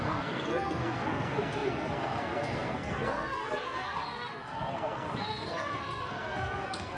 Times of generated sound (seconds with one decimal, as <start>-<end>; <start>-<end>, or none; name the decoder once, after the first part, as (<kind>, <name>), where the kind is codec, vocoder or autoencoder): 0.0-7.0 (codec, SNAC)